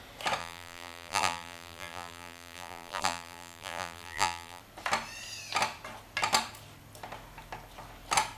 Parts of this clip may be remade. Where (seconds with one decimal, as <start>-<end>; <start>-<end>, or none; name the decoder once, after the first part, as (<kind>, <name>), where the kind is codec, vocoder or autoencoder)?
0.4-4.6 (vocoder, BigVGAN v2)